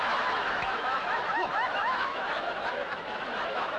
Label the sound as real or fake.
fake